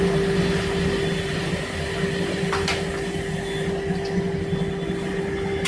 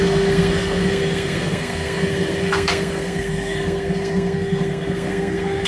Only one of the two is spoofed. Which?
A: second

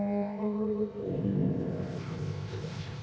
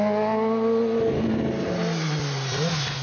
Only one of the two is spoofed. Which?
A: first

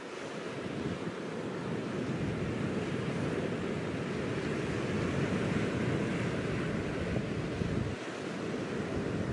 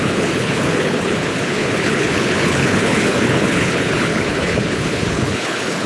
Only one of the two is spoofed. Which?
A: second